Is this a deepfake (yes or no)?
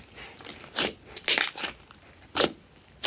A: no